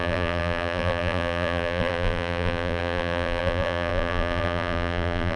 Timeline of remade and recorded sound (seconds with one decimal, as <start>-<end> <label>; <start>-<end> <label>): 0.0-5.4 remade